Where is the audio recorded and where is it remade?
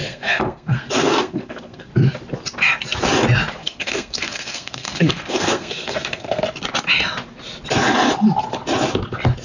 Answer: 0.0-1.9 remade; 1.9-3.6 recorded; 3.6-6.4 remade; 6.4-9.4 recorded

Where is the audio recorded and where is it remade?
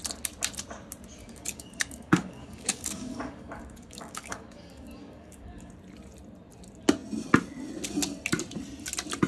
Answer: 0.0-1.2 recorded; 1.2-5.7 remade; 5.7-9.3 recorded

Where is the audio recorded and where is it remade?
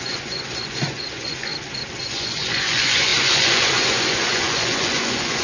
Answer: 0.0-1.5 remade; 1.5-2.0 recorded; 2.0-5.4 remade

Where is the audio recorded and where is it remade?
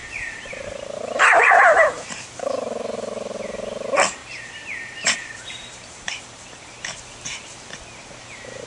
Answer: 0.0-2.2 remade; 2.2-4.2 recorded; 4.2-7.0 remade; 7.0-8.7 recorded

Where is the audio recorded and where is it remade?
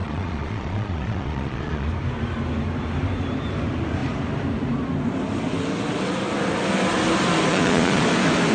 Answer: 0.0-1.9 remade; 1.9-7.5 recorded; 7.5-8.0 remade; 8.0-8.5 recorded